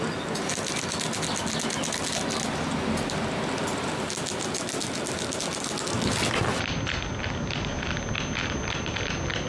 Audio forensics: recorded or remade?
recorded